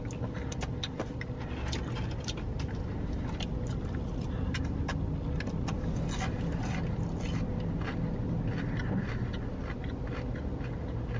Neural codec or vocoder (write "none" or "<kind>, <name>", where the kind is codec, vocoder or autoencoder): none